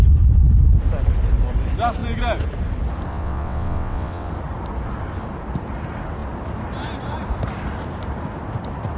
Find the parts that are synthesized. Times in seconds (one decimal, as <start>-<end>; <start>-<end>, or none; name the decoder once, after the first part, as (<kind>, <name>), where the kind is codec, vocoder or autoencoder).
3.1-4.3 (vocoder, WaveNeXt)